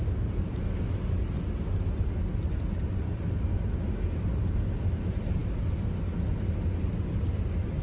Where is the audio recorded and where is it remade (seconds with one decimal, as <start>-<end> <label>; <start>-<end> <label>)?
0.0-7.8 recorded